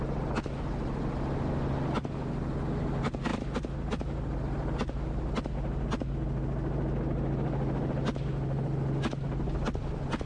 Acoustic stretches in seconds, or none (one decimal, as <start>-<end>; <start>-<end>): 0.0-10.3